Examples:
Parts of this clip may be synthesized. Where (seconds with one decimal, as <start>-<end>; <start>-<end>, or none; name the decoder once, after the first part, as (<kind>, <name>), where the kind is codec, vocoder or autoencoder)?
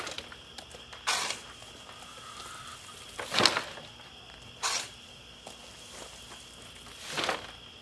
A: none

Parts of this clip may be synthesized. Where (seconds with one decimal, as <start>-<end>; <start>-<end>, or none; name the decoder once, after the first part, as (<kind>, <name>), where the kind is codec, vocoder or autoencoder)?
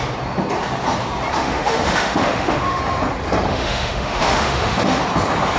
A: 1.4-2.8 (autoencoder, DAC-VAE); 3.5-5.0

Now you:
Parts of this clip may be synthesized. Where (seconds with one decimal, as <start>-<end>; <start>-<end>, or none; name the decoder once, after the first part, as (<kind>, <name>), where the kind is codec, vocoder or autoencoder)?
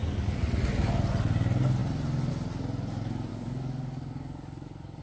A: 3.3-5.0 (codec, DAC)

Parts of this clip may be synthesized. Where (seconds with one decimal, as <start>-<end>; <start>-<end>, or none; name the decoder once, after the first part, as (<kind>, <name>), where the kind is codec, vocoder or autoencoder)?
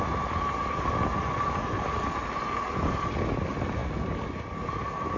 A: none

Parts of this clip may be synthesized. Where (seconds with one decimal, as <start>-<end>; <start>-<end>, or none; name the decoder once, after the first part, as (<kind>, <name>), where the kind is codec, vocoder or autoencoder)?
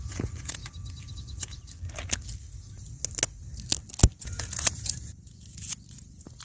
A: 0.0-0.6 (vocoder, Vocos); 1.1-1.6; 4.2-6.4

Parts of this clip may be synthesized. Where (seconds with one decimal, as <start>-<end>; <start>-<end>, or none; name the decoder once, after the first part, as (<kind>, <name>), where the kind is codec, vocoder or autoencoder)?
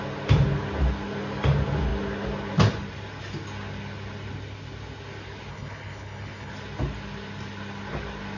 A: 5.5-6.5 (codec, HILCodec)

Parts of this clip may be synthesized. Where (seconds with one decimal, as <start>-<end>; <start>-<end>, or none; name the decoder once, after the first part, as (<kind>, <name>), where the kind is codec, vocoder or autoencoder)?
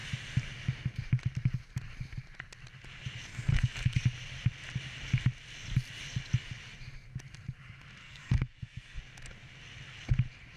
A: 3.5-4.0 (codec, SNAC); 8.0-9.0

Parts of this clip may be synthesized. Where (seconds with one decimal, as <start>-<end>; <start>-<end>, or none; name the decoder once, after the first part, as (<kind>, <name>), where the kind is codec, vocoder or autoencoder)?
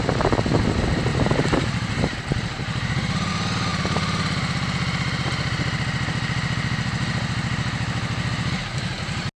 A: 1.1-3.3 (vocoder, BigVGAN v2)